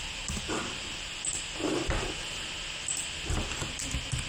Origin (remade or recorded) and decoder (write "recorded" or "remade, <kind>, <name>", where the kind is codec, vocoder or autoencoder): recorded